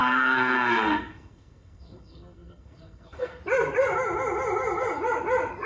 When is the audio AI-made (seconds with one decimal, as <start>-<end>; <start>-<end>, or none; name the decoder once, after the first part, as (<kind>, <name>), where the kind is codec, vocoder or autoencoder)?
0.0-3.4 (codec, SNAC)